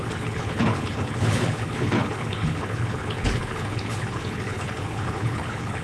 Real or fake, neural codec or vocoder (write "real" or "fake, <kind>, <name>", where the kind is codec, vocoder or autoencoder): fake, codec, HILCodec